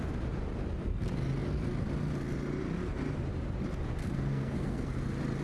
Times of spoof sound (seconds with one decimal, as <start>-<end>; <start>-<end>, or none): 4.0-5.0